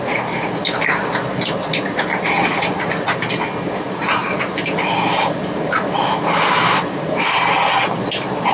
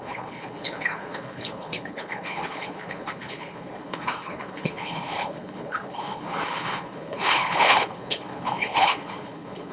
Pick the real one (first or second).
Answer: first